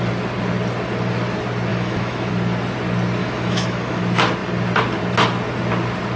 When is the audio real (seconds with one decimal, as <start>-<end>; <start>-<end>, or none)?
0.0-1.7; 2.3-3.2; 4.0-6.2